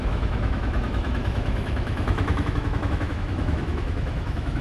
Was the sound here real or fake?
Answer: fake